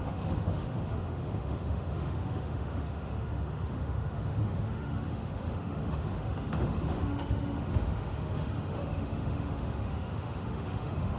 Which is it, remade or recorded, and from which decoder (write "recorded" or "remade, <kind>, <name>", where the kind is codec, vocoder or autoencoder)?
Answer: remade, autoencoder, DAC-VAE